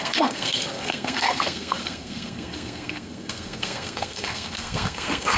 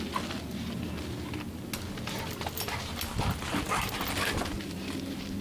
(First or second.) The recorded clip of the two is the second